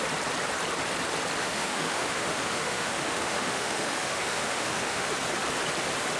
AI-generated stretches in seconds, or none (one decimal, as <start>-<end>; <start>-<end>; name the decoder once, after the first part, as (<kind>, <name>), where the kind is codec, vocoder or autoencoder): 1.4-5.1 (autoencoder, DAC-VAE)